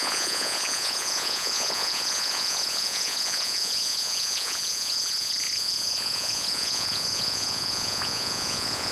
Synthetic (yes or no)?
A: yes